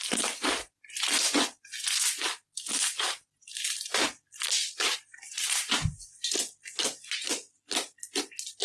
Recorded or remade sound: recorded